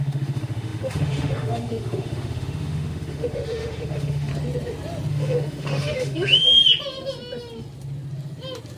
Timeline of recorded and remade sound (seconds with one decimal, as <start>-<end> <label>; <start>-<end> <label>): 0.0-4.3 remade; 4.3-5.1 recorded; 5.1-6.6 remade; 6.6-8.8 recorded